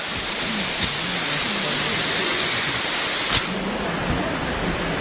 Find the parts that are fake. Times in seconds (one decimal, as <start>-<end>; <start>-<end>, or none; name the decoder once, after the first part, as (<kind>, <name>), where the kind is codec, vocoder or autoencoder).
2.2-2.8 (vocoder, Vocos)